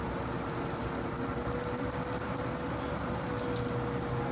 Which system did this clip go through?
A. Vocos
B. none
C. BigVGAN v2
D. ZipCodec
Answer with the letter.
B